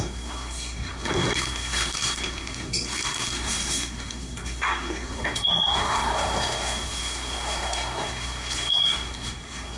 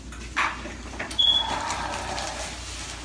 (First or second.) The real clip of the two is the second